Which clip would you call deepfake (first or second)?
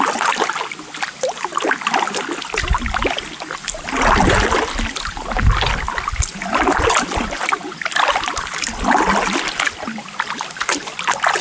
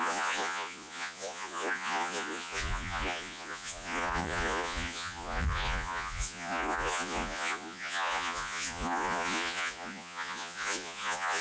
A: second